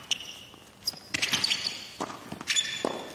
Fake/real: real